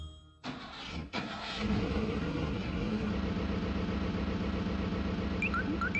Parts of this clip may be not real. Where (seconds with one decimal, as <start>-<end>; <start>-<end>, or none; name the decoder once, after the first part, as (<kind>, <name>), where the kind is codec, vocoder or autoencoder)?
0.9-3.1 (codec, SNAC)